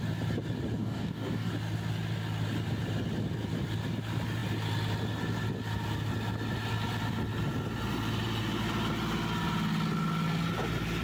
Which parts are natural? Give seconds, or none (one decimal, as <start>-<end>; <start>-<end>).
0.0-0.8; 1.5-11.0